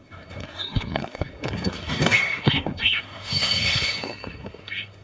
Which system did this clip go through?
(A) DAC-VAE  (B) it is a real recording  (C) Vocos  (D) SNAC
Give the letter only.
D